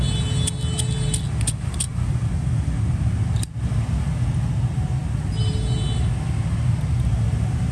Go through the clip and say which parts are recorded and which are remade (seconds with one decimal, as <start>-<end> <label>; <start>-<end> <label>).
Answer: 0.0-7.7 recorded